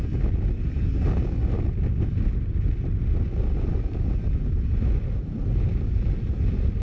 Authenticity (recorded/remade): recorded